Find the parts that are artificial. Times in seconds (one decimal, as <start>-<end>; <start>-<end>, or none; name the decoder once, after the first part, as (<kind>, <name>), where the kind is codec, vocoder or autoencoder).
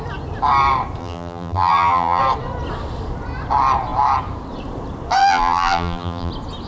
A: 1.0-2.2 (vocoder, BigVGAN v2); 5.2-6.3